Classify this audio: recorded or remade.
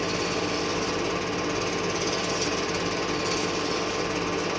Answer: recorded